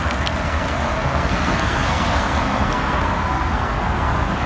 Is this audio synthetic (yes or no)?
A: yes